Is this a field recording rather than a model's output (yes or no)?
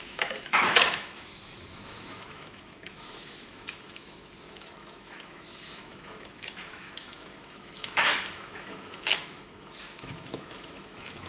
no